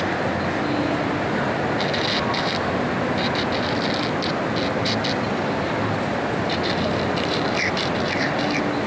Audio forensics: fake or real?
real